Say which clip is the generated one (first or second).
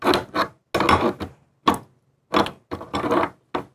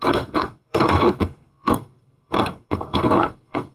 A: second